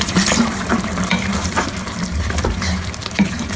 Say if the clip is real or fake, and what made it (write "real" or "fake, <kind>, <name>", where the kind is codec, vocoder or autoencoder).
fake, vocoder, BigVGAN v2